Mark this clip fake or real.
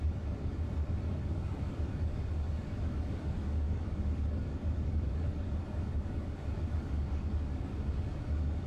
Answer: fake